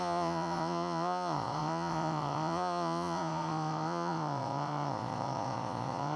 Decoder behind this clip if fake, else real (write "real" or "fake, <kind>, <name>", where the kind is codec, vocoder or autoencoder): fake, vocoder, Vocos